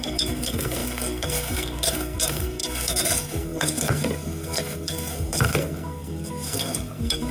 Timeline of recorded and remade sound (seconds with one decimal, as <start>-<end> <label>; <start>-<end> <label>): 0.0-7.3 remade

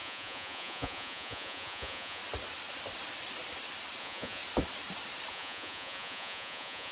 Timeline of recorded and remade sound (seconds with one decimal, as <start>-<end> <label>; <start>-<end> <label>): 0.0-2.2 remade; 2.2-4.0 recorded; 4.0-4.4 remade; 4.4-5.3 recorded; 5.3-6.9 remade